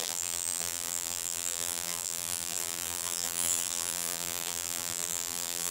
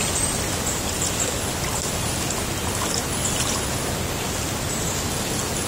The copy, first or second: first